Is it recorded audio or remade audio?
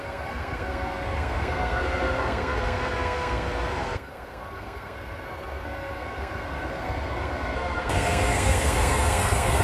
remade